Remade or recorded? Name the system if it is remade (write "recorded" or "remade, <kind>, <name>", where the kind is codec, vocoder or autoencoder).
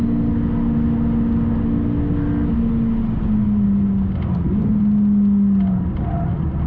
recorded